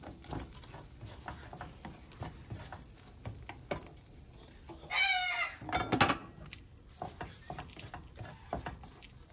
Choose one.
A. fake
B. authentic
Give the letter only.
B